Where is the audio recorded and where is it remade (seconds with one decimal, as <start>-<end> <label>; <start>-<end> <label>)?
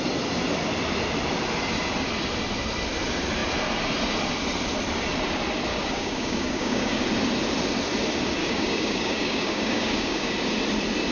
0.0-5.7 recorded; 5.7-7.0 remade; 7.0-8.4 recorded; 8.4-10.3 remade; 10.3-11.1 recorded